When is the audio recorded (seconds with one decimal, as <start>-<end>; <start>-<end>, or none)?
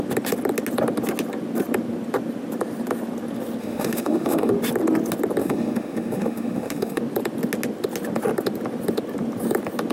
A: 0.0-3.6; 4.5-5.4; 7.0-9.9